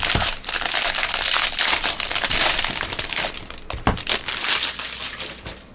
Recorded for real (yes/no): yes